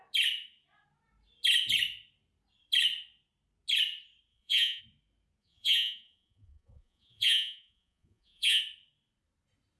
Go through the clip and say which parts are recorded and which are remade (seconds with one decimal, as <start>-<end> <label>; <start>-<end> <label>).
0.0-4.3 recorded; 4.3-4.8 remade; 4.8-5.4 recorded; 5.4-8.6 remade; 8.6-9.8 recorded